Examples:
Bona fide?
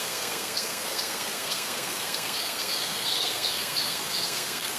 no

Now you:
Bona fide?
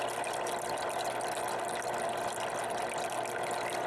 yes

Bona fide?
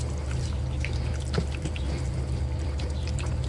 yes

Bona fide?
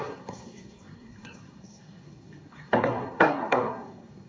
no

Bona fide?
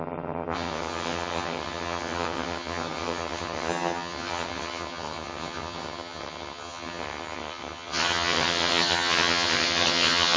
no